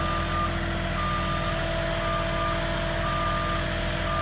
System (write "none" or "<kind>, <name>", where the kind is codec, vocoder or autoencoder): none